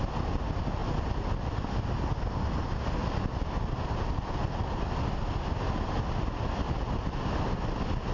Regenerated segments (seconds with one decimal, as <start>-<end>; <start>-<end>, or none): none